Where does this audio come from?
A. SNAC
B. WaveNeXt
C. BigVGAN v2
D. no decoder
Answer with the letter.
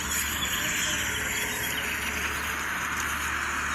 D